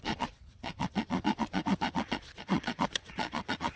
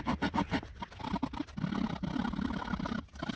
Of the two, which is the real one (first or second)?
second